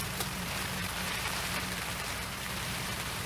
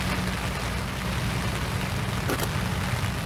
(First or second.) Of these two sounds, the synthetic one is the first